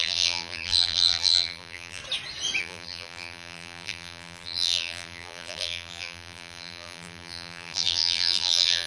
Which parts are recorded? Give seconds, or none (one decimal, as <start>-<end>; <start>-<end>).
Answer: 2.0-2.6